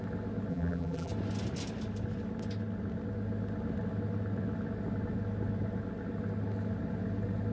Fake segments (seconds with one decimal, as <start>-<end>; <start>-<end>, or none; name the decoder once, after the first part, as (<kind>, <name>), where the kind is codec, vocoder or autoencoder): 0.5-1.1 (vocoder, BigVGAN v2)